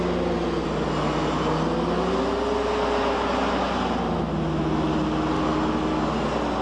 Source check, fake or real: real